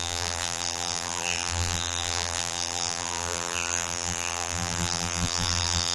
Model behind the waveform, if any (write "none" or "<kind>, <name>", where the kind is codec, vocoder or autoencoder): vocoder, BigVGAN v2